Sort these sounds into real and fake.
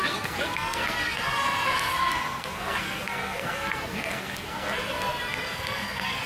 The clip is fake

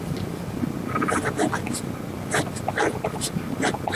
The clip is real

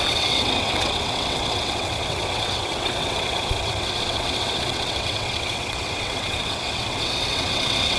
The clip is fake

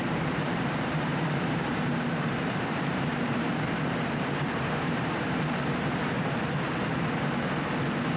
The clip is fake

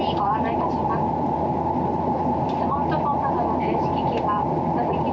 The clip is fake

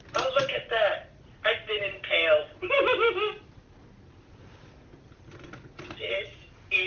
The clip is fake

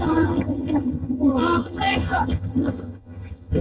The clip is fake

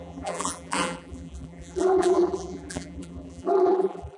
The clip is fake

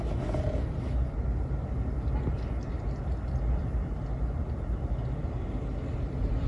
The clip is real